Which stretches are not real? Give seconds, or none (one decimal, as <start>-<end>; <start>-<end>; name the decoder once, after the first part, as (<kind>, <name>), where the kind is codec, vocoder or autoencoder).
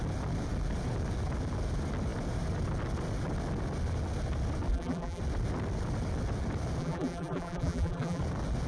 4.7-5.2 (vocoder, BigVGAN v2); 6.8-8.2